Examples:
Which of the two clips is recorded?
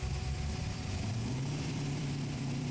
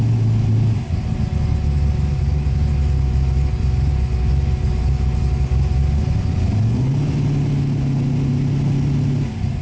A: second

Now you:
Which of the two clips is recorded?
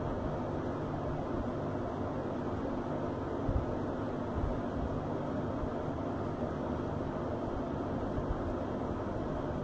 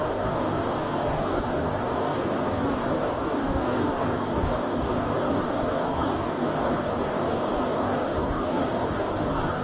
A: first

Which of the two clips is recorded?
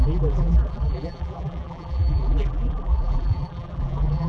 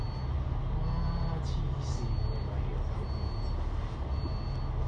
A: second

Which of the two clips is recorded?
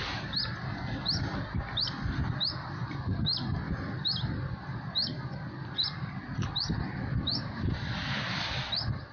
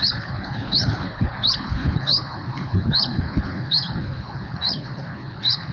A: first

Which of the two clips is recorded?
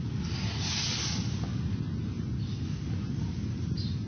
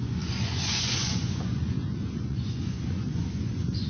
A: first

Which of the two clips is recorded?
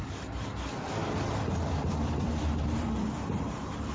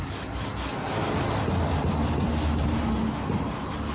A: second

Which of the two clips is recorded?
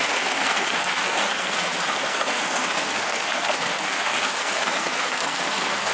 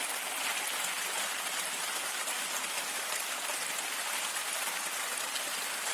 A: second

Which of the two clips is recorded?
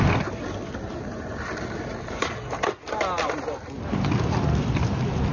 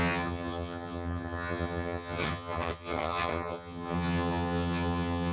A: first